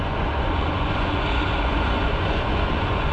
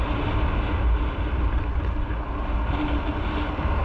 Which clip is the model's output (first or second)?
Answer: first